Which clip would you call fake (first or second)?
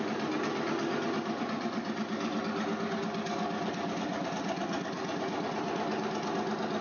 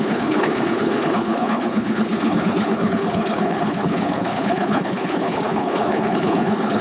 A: second